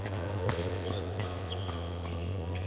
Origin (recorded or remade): remade